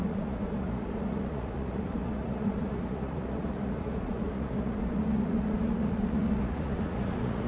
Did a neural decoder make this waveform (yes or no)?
yes